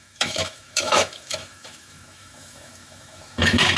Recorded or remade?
remade